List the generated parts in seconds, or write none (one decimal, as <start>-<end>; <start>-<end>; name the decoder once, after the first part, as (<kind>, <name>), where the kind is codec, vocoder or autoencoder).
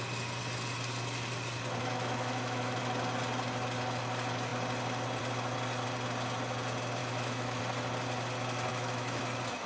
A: 1.8-2.8 (autoencoder, DAC-VAE); 7.0-7.6; 8.7-9.2